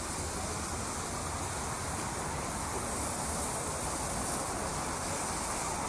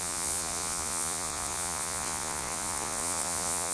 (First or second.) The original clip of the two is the first